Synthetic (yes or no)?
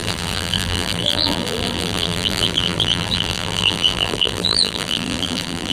yes